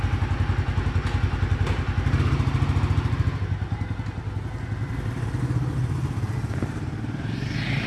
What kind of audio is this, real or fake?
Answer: real